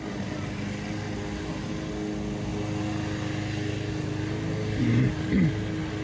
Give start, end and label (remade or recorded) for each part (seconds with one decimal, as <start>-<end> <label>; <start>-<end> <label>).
0.0-6.0 recorded